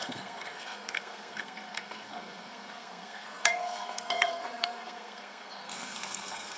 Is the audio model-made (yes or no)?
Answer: yes